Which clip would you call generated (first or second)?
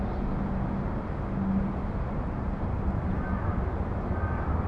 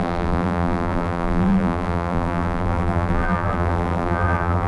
second